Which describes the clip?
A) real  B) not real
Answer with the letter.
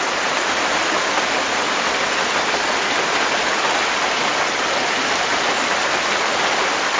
A